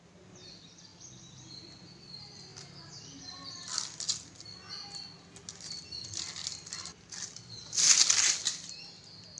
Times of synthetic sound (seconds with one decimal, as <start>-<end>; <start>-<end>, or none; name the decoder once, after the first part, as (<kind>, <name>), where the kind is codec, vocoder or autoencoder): 0.0-2.5 (vocoder, BigVGAN v2); 5.7-9.4